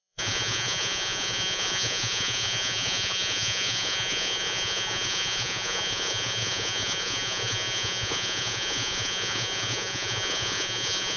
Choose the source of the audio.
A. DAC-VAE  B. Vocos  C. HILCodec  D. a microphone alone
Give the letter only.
B